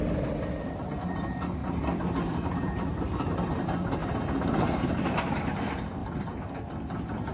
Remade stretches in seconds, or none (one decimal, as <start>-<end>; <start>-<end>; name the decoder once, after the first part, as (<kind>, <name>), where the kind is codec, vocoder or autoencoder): 1.6-3.5 (vocoder, BigVGAN v2); 4.0-5.3